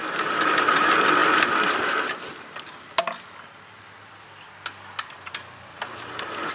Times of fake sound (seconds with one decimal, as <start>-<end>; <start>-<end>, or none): none

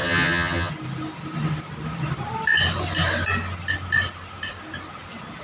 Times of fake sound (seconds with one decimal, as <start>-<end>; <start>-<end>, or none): 0.0-0.7

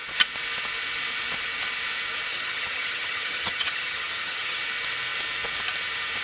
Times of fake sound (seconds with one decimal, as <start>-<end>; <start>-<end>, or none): 2.3-4.6

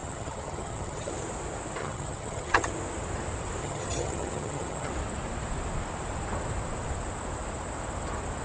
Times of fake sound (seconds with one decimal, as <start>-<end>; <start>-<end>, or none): 0.0-1.1; 1.8-2.7; 3.6-4.9

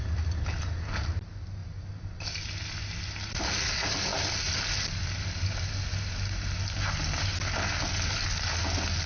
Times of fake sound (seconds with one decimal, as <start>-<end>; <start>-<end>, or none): none

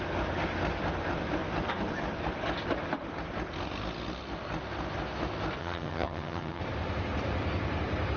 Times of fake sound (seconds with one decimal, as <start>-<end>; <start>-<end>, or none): 5.6-6.6

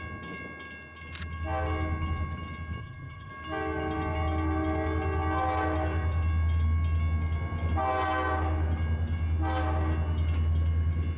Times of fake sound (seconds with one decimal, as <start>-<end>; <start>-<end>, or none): 2.8-3.3